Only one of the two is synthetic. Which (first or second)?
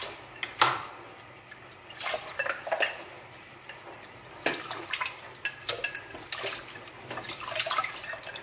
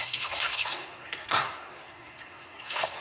second